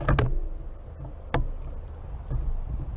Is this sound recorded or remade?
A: recorded